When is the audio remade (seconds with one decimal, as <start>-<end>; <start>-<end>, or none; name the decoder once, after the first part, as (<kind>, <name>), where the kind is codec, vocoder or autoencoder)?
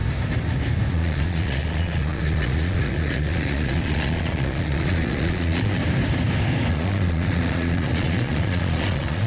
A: 0.9-5.8 (vocoder, Vocos); 6.7-9.3